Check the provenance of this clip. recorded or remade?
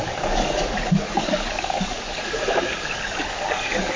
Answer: remade